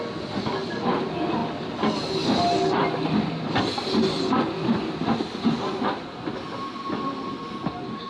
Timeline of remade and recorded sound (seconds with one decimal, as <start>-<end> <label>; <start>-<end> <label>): 0.0-8.1 recorded